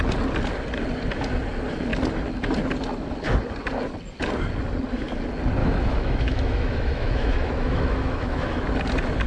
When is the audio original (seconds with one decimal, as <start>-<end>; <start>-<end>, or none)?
0.0-5.6; 8.6-9.3